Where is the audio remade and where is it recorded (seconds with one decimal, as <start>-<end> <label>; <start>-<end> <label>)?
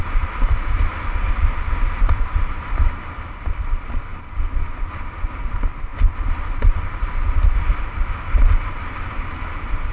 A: 0.0-4.1 remade; 4.1-4.9 recorded; 4.9-9.9 remade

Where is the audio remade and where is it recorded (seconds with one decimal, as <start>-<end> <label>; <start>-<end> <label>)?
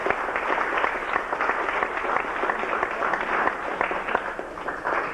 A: 0.0-5.1 recorded